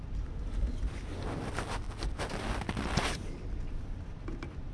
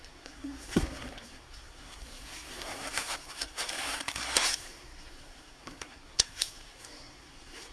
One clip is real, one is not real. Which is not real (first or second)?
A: second